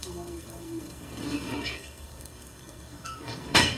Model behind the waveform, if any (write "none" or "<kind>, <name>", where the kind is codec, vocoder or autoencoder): codec, SNAC